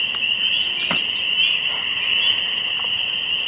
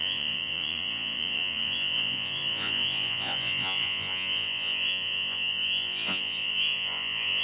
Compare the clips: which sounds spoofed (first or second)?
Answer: second